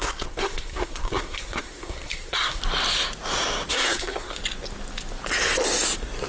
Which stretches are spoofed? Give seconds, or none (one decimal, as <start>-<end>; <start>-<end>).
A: 0.0-2.6; 3.7-4.4

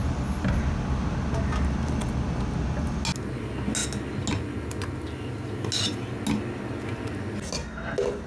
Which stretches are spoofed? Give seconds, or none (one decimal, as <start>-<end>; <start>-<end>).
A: none

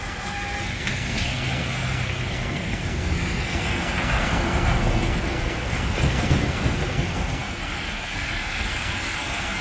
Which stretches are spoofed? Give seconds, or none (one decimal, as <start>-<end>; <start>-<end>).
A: 0.0-9.6

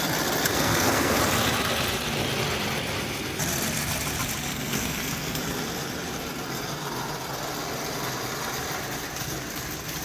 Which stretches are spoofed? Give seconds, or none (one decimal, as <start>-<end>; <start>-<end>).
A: 0.5-1.2; 4.5-5.4

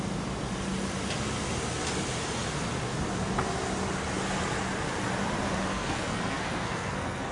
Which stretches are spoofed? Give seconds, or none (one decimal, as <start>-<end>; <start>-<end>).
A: 5.7-7.3

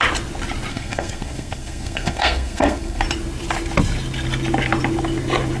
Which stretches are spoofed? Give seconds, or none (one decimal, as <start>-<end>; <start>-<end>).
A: 0.7-3.0

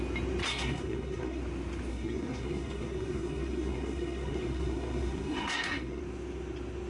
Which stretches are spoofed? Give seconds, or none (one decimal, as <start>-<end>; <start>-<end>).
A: 0.5-1.4; 1.9-6.0

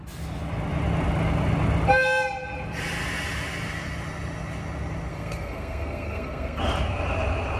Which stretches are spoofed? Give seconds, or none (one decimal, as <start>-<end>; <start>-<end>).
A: 5.1-6.6